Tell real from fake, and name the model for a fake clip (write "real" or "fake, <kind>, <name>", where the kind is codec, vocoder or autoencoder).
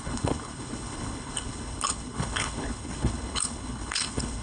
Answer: fake, codec, HILCodec